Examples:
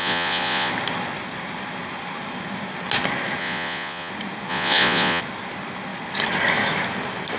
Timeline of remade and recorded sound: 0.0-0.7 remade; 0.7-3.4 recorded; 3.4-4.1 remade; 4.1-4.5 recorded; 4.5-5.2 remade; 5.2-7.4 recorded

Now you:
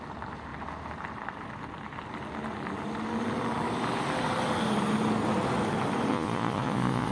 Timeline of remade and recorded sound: 0.0-6.1 recorded; 6.1-7.1 remade